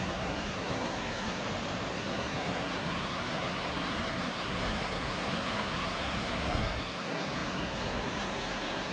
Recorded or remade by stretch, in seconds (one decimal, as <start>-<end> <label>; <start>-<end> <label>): 0.0-1.4 remade; 1.4-1.9 recorded; 1.9-8.9 remade

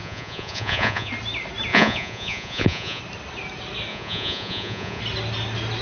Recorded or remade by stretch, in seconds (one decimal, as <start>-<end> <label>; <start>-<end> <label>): 0.0-1.1 remade; 1.1-1.7 recorded; 1.7-3.0 remade; 3.0-3.9 recorded; 3.9-5.0 remade; 5.0-5.8 recorded

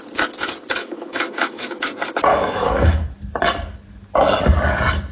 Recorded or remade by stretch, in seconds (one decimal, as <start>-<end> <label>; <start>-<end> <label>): 0.0-0.8 recorded; 0.8-1.8 remade; 1.8-2.3 recorded; 2.3-3.1 remade; 3.1-5.1 recorded

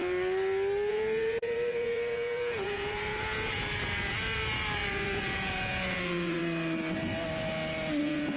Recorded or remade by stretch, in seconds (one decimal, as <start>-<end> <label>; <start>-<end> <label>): 0.0-0.9 recorded; 0.9-6.4 remade; 6.4-8.0 recorded; 8.0-8.4 remade